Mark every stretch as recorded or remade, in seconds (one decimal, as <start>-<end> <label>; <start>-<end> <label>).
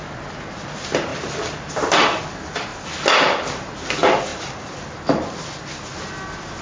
0.0-1.1 recorded; 1.1-2.2 remade; 2.2-4.3 recorded; 4.3-4.8 remade; 4.8-6.6 recorded